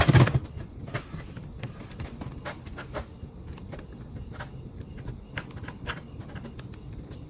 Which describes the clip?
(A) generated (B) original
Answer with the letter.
B